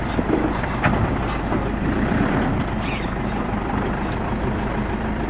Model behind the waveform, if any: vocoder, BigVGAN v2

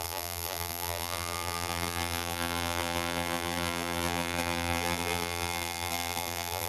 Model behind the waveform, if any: vocoder, BigVGAN v2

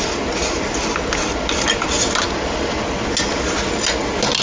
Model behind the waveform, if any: none